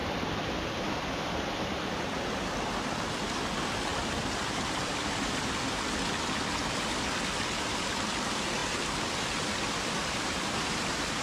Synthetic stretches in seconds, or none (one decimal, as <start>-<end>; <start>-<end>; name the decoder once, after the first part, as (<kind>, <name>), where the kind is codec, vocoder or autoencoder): 0.0-1.9 (vocoder, BigVGAN v2); 3.9-6.0; 10.0-10.6